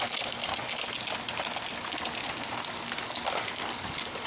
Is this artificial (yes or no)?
no